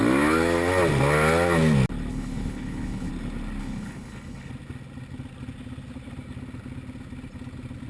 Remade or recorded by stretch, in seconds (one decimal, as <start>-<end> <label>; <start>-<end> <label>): 0.0-2.1 recorded; 2.1-3.1 remade; 3.1-3.6 recorded; 3.6-4.5 remade; 4.5-7.9 recorded